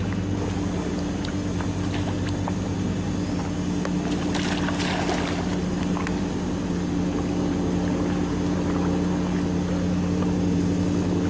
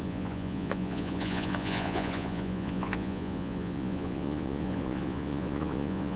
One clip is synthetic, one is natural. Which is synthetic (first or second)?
second